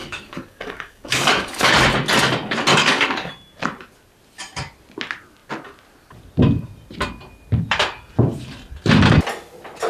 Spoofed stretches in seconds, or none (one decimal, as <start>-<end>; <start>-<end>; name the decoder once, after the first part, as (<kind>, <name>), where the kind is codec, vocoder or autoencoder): 0.0-1.7 (codec, DAC); 2.7-3.3